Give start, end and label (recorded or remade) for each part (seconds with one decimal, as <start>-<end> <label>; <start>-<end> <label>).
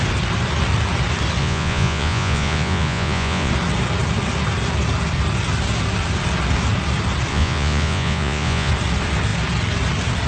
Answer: 0.0-1.4 recorded; 1.4-3.5 remade; 3.5-7.3 recorded; 7.3-8.7 remade; 8.7-10.3 recorded